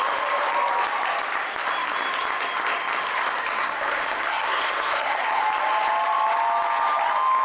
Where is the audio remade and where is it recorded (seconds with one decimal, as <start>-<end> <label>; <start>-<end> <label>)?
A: 0.0-3.6 recorded; 3.6-5.4 remade; 5.4-7.4 recorded